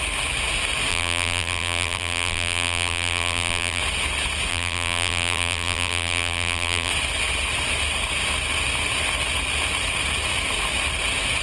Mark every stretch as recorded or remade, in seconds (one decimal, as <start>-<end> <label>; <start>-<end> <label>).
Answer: 0.0-0.9 recorded; 0.9-3.8 remade; 3.8-4.5 recorded; 4.5-6.9 remade; 6.9-11.4 recorded